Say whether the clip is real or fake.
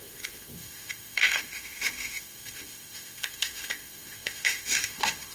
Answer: fake